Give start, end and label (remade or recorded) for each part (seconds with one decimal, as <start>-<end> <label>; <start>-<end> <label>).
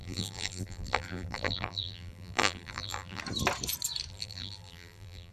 0.0-3.2 remade; 3.2-4.1 recorded; 4.1-5.3 remade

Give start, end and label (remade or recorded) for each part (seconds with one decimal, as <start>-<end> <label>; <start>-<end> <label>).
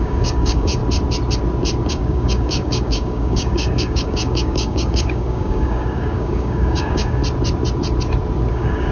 0.0-0.8 remade; 0.8-1.9 recorded; 1.9-7.2 remade; 7.2-8.5 recorded; 8.5-8.9 remade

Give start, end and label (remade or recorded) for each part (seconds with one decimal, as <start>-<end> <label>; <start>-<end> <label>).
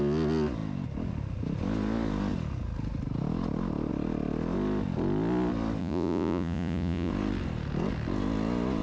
0.0-5.8 recorded; 5.8-7.1 remade; 7.1-8.8 recorded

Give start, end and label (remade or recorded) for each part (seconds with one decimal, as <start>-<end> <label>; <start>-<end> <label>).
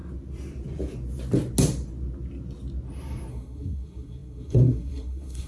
0.0-3.3 recorded; 3.3-5.5 remade